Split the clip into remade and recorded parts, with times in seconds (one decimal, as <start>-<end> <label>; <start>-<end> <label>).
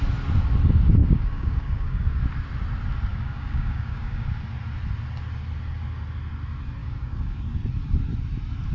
0.0-1.0 recorded; 1.0-2.2 remade; 2.2-3.1 recorded; 3.1-4.3 remade; 4.3-6.8 recorded; 6.8-7.4 remade; 7.4-8.7 recorded